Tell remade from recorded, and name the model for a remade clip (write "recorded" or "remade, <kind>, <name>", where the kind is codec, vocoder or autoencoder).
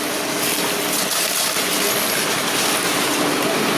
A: recorded